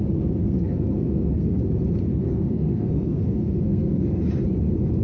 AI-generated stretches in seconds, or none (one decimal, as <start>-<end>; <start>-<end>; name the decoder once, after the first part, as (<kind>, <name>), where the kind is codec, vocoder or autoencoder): 0.4-1.6 (codec, SNAC); 2.1-4.2